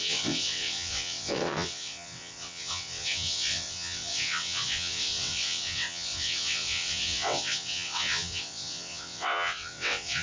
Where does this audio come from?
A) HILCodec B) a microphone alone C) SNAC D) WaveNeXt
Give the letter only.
D